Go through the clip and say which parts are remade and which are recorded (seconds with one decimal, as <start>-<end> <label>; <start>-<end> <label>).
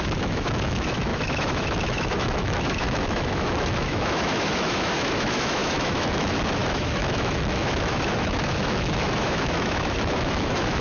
0.0-10.8 remade